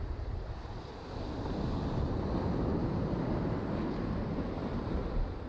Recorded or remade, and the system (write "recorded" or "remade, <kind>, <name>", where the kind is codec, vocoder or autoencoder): recorded